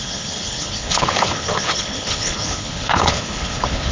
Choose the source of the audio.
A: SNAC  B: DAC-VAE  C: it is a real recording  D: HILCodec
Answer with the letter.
D